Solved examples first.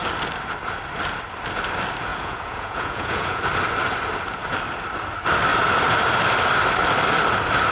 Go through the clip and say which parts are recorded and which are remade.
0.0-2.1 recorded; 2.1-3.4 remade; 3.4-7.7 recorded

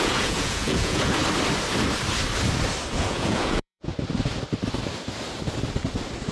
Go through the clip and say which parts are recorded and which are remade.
0.0-1.2 remade; 1.2-2.9 recorded; 2.9-3.9 remade; 3.9-6.3 recorded

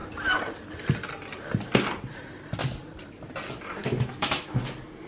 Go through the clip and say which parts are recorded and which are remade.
0.0-3.8 recorded; 3.8-4.6 remade; 4.6-5.1 recorded

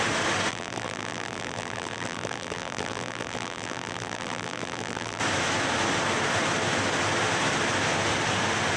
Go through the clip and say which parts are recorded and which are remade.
0.0-0.5 recorded; 0.5-5.2 remade; 5.2-8.8 recorded

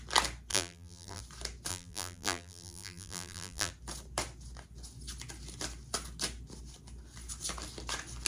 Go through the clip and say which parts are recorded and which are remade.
0.0-0.5 recorded; 0.5-1.2 remade; 1.2-1.7 recorded; 1.7-3.7 remade; 3.7-8.3 recorded

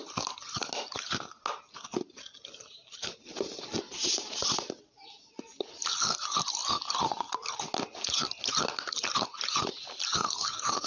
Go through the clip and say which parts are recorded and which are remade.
0.0-10.9 recorded

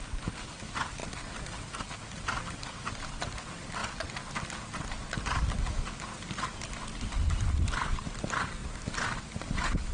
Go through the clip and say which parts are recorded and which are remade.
0.0-1.0 remade; 1.0-3.2 recorded; 3.2-3.8 remade; 3.8-6.8 recorded; 6.8-8.6 remade; 8.6-9.2 recorded; 9.2-9.9 remade